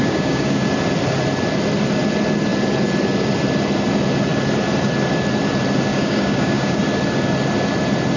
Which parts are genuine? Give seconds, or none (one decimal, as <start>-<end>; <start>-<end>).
0.6-5.9; 6.8-8.2